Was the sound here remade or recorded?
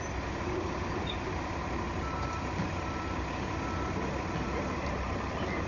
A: recorded